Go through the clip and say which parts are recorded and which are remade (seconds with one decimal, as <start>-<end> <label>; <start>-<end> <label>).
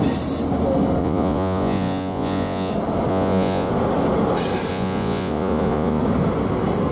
0.0-1.0 recorded; 1.0-2.7 remade; 2.7-3.1 recorded; 3.1-3.7 remade; 3.7-4.7 recorded; 4.7-6.0 remade; 6.0-6.9 recorded